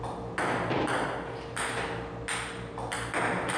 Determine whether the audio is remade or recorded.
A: recorded